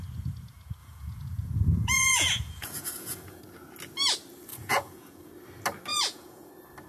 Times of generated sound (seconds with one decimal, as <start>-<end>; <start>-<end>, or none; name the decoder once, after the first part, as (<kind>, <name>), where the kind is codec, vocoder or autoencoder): 0.8-3.4 (vocoder, Vocos); 4.5-5.3; 5.9-6.5